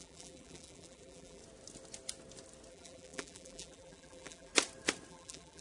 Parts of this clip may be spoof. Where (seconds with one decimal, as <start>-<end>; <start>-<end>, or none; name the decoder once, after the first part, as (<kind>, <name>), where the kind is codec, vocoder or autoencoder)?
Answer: 0.0-1.4 (vocoder, BigVGAN v2); 2.7-4.5; 5.1-5.6